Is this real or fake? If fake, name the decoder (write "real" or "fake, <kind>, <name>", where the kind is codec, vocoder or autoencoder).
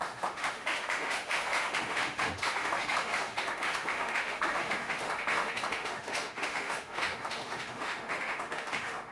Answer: fake, autoencoder, DAC-VAE